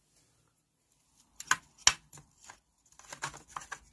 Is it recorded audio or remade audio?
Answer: recorded